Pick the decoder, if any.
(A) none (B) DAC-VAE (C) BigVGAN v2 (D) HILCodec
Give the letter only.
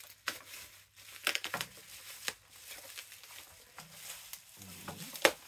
A